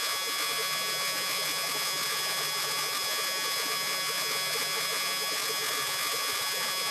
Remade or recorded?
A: remade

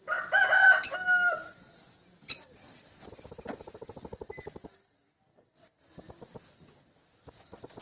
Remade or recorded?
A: recorded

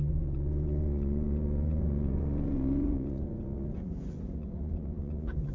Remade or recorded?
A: remade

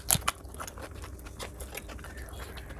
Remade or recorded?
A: recorded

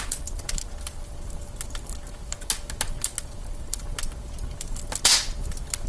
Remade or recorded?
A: recorded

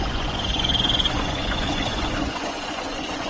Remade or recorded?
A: remade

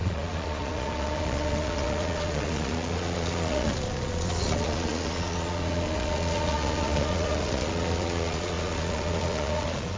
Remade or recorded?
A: remade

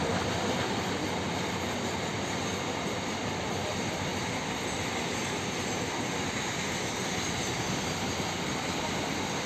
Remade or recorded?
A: recorded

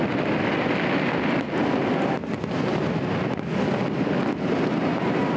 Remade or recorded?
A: recorded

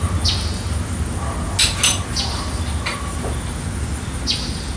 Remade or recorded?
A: recorded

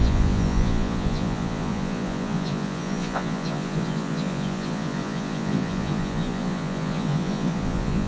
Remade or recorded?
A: remade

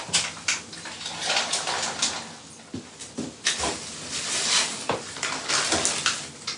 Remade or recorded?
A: recorded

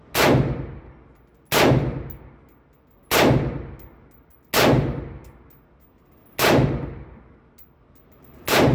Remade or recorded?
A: recorded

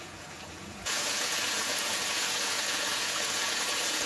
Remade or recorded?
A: remade